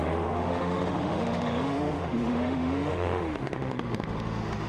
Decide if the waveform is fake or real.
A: fake